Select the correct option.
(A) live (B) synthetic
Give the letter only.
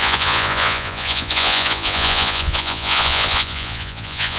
B